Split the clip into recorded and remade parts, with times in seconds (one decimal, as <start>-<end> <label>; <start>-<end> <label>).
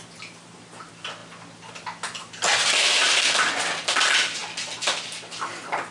0.0-5.9 recorded